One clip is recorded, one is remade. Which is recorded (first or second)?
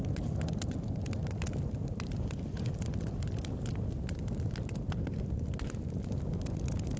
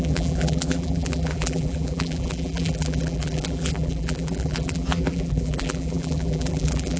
first